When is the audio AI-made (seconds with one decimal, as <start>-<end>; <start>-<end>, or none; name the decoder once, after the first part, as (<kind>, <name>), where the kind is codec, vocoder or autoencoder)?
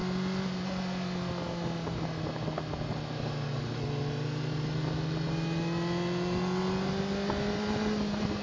none